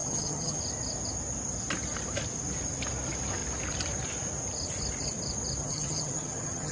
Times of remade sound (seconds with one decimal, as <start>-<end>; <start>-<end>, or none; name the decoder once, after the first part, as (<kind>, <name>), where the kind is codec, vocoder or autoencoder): 0.0-0.6 (vocoder, HiFi-GAN); 5.6-6.7